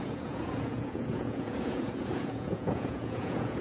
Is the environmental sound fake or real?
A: fake